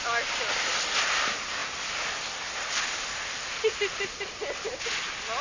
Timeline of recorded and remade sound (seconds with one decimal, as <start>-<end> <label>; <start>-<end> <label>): 0.0-5.4 recorded